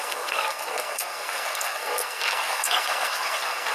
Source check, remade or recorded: remade